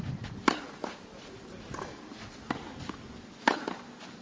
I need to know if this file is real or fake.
real